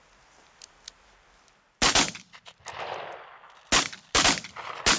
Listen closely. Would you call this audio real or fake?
real